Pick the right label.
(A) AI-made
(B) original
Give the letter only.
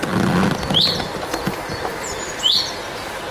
B